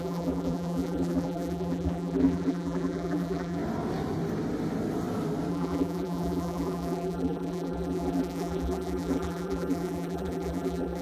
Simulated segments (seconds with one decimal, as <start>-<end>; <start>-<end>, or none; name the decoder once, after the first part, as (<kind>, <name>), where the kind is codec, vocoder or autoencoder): 0.0-3.6 (vocoder, BigVGAN v2); 5.5-11.0